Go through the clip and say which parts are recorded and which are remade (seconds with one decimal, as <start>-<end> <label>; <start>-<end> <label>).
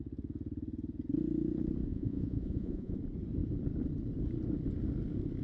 0.0-1.9 recorded; 1.9-3.0 remade; 3.0-5.4 recorded